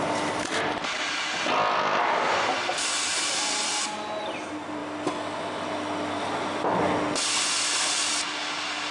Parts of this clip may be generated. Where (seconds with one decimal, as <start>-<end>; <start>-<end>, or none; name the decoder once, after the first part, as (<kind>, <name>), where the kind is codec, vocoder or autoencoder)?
none